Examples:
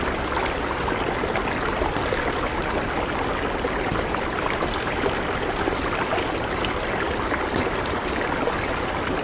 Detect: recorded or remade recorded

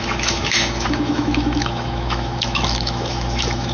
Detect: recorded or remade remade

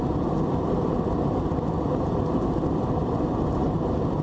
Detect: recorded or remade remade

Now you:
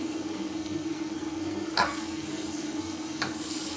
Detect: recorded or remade remade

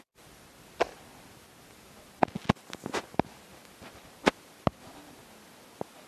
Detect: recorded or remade recorded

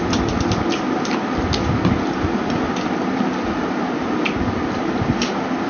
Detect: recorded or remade recorded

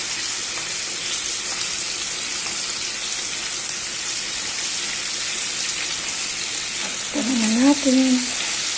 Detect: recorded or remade recorded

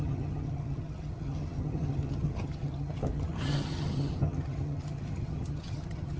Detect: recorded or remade remade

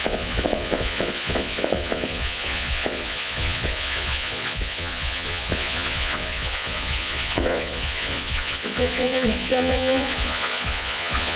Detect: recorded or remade remade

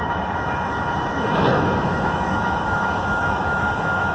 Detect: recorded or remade remade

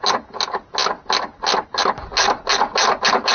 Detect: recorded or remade recorded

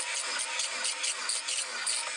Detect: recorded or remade recorded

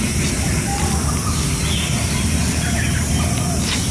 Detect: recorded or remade recorded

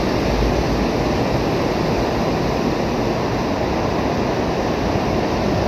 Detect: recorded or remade recorded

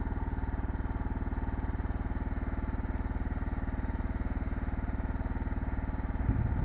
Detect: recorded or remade recorded